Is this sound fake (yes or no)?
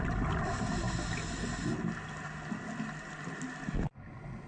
no